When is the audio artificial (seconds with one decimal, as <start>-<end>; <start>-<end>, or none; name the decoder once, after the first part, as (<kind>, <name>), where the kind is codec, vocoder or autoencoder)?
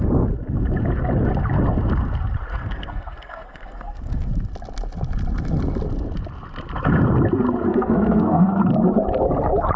2.5-4.3 (codec, SNAC); 7.7-8.6